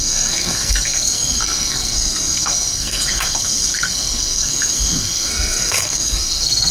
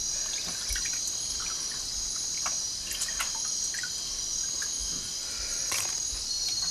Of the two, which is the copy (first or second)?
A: first